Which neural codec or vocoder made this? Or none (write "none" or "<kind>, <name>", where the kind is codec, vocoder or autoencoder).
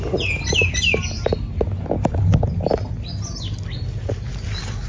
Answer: none